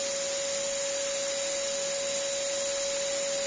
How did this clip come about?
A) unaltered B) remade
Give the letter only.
A